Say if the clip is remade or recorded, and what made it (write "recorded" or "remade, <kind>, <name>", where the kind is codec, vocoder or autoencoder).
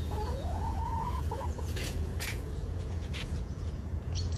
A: remade, vocoder, Vocos